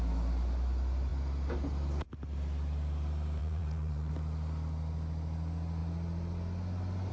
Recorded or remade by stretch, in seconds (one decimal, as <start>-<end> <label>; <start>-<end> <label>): 0.0-3.4 recorded; 3.4-4.1 remade; 4.1-7.1 recorded